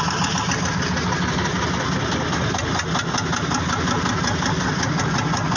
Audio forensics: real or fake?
real